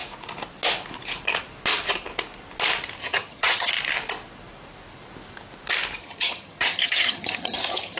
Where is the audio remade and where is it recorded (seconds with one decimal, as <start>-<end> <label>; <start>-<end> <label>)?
0.0-3.0 recorded; 3.0-3.7 remade; 3.7-6.0 recorded; 6.0-8.0 remade